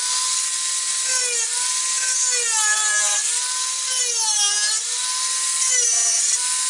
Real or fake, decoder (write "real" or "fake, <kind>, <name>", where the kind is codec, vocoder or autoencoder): real